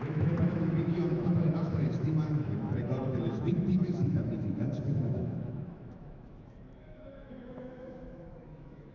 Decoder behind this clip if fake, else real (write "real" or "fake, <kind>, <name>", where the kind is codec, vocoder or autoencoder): fake, autoencoder, DAC-VAE